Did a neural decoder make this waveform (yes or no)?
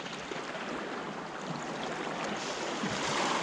no